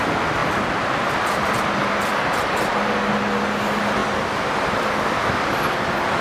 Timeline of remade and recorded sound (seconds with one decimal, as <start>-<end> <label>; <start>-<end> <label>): 0.0-6.2 recorded